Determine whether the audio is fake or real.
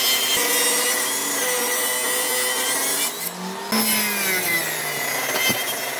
real